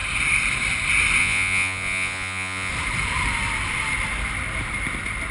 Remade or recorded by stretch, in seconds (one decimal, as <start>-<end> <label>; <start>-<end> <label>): 0.0-1.2 recorded; 1.2-2.7 remade; 2.7-5.3 recorded